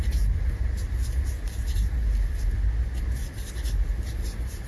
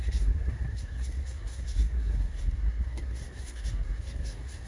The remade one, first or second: second